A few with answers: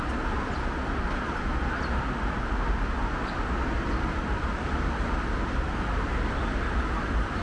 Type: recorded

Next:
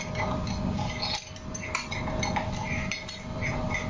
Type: recorded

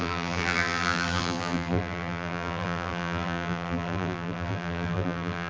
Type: remade